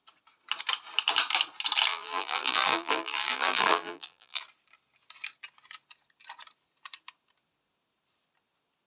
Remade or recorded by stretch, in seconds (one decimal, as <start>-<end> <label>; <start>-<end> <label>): 0.0-1.9 recorded; 1.9-4.4 remade; 4.4-8.9 recorded

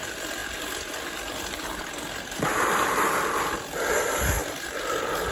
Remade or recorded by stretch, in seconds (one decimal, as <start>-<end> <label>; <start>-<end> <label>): 0.0-0.4 remade; 0.4-3.6 recorded; 3.6-4.4 remade; 4.4-5.3 recorded

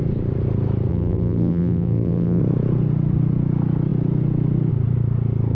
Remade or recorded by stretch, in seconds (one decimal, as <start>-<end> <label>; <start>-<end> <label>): 0.0-0.9 recorded; 0.9-2.4 remade; 2.4-5.5 recorded

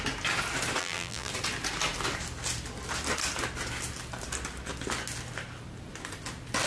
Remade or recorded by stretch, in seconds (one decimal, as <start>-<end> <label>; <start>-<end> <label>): 0.0-0.8 recorded; 0.8-1.3 remade; 1.3-6.7 recorded

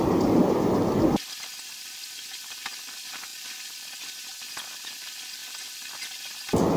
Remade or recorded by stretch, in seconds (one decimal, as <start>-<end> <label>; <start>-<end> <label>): 0.0-0.4 recorded; 0.4-2.7 remade; 2.7-6.8 recorded